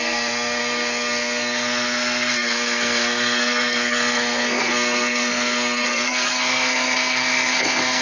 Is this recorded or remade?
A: remade